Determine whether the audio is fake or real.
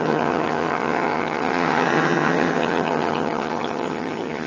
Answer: fake